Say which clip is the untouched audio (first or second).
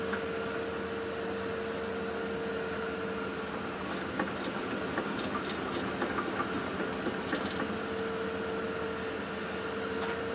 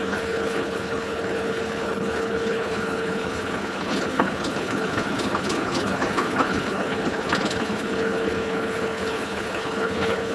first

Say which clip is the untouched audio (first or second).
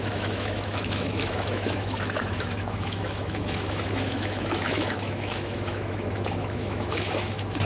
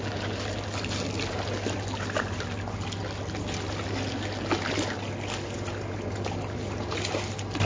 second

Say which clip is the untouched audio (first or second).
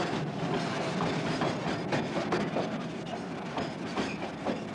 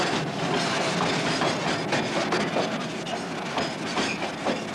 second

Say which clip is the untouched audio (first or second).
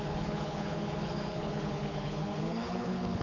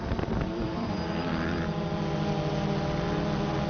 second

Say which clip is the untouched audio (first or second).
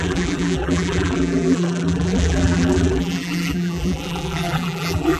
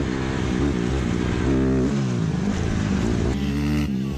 second